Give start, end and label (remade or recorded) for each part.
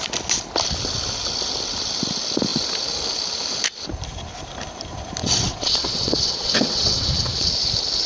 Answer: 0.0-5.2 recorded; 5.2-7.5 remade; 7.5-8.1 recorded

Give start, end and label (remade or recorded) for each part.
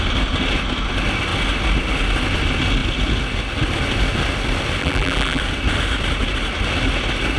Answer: 0.0-4.8 recorded; 4.8-5.4 remade; 5.4-7.4 recorded